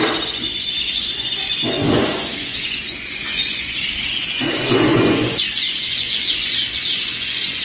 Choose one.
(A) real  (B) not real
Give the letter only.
B